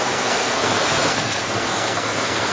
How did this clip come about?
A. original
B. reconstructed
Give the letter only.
B